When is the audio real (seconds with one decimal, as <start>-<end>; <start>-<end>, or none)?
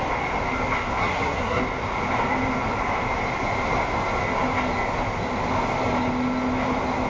0.0-1.0; 1.6-7.1